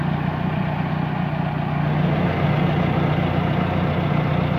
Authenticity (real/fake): real